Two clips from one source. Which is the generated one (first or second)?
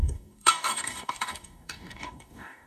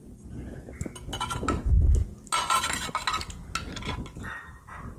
first